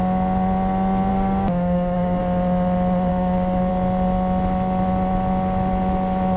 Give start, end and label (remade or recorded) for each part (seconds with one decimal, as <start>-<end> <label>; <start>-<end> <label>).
0.0-1.1 recorded; 1.1-2.2 remade; 2.2-3.1 recorded; 3.1-3.7 remade; 3.7-6.4 recorded